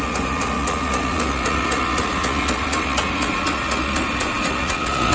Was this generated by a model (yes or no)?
yes